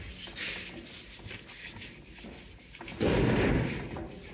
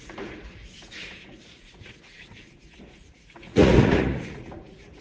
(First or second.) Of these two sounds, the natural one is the first